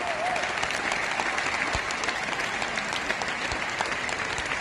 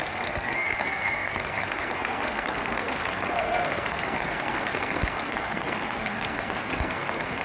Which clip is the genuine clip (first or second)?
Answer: first